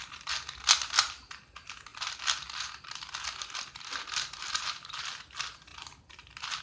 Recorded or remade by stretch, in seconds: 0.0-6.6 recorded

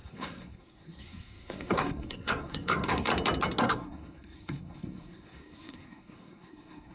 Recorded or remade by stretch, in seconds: 0.0-3.1 remade; 3.1-3.6 recorded; 3.6-6.9 remade

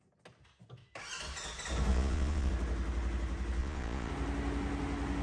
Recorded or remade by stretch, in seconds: 0.0-1.9 recorded; 1.9-2.5 remade; 2.5-3.6 recorded; 3.6-4.1 remade; 4.1-5.2 recorded

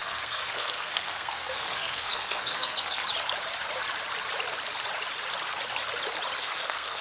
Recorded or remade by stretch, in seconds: 0.0-3.0 remade; 3.0-6.4 recorded; 6.4-7.0 remade

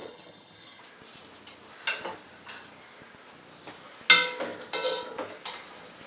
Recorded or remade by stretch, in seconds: 0.0-0.8 remade; 0.8-6.1 recorded

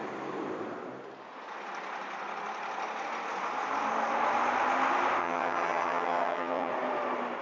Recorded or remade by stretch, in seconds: 0.0-5.2 recorded; 5.2-6.7 remade; 6.7-7.4 recorded

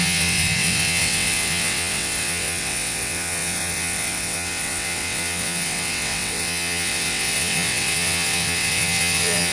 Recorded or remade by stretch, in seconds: 0.0-9.5 remade

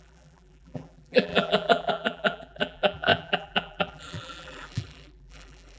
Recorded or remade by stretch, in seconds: 0.0-5.8 remade